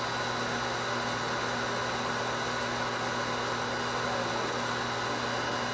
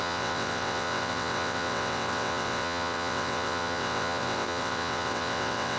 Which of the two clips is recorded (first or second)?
first